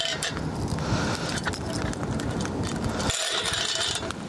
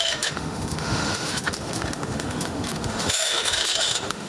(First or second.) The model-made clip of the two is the second